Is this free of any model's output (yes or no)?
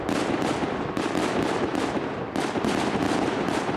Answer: no